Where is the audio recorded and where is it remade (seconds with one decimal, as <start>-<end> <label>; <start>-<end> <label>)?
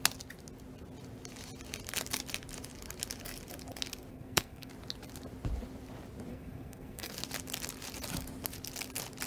0.0-4.1 recorded; 4.1-4.7 remade; 4.7-6.3 recorded; 6.3-7.1 remade; 7.1-9.3 recorded